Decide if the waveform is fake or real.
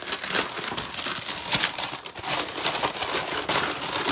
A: real